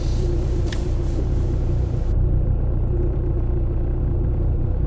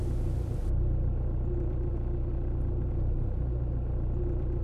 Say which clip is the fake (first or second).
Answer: first